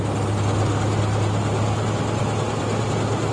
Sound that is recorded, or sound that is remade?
recorded